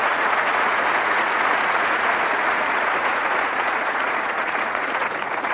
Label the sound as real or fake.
fake